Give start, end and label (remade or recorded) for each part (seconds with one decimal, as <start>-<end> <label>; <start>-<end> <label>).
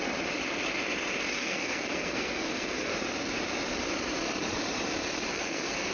0.0-1.4 recorded; 1.4-2.9 remade; 2.9-5.3 recorded; 5.3-5.9 remade